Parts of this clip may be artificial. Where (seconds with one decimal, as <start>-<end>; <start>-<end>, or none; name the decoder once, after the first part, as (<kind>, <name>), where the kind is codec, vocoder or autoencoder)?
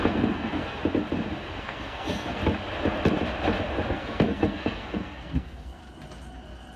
0.0-0.8 (codec, SNAC); 1.6-2.4; 3.9-5.8